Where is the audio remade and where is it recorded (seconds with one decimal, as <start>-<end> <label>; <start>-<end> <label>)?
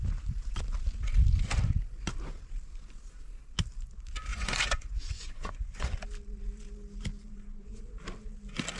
0.0-4.3 recorded; 4.3-5.9 remade; 5.9-7.2 recorded; 7.2-7.8 remade; 7.8-8.8 recorded